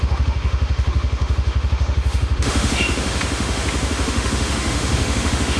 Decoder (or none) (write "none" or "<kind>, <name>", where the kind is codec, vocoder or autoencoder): autoencoder, DAC-VAE